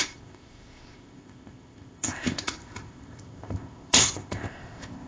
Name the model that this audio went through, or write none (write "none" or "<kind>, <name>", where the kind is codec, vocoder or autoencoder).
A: codec, ZipCodec